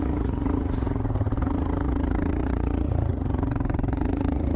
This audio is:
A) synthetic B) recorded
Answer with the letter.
A